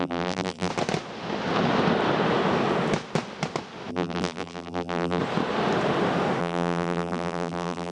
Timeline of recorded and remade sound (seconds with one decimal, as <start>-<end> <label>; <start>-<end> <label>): 0.0-0.7 remade; 0.7-3.9 recorded; 3.9-5.2 remade; 5.2-6.4 recorded; 6.4-7.9 remade